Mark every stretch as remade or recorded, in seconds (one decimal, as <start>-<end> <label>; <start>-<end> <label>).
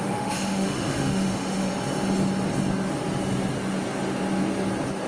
0.0-1.7 remade; 1.7-5.1 recorded